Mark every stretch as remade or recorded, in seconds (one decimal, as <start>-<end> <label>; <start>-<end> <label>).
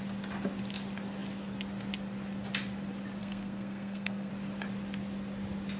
0.0-3.2 recorded; 3.2-4.3 remade; 4.3-5.8 recorded